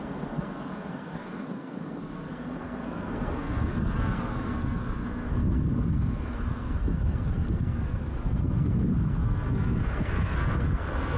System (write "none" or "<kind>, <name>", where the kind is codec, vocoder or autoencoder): codec, SNAC